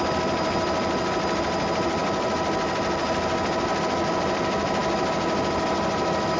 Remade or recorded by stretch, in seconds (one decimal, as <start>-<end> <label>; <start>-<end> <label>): 0.0-6.4 recorded